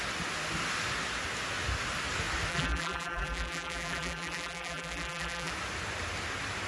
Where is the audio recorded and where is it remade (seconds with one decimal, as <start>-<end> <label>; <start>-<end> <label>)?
0.0-2.5 recorded; 2.5-5.5 remade; 5.5-6.7 recorded